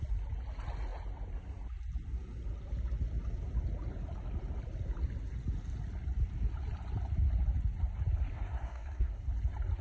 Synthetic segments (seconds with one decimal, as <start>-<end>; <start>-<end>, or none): 8.3-9.2